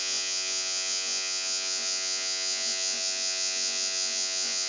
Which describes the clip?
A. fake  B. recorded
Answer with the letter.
A